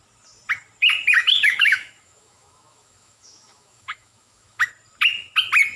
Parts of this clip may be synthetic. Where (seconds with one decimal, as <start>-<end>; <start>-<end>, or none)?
1.2-4.7